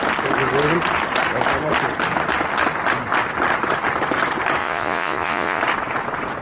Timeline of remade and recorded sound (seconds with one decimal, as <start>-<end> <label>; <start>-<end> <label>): 0.0-4.6 recorded; 4.6-5.6 remade; 5.6-6.4 recorded